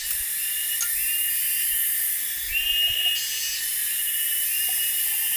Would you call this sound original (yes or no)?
yes